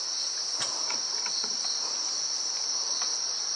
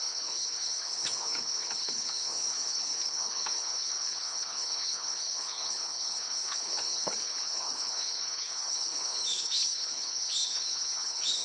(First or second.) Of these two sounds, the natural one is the first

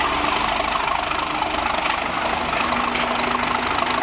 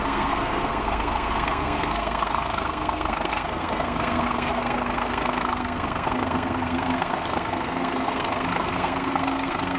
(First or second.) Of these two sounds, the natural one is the first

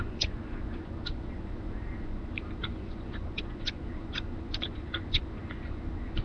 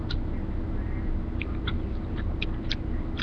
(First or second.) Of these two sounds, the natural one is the second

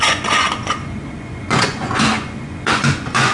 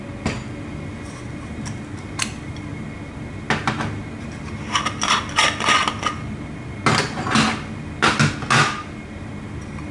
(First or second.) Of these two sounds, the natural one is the second